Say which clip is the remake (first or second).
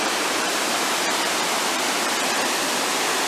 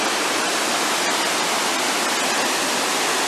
first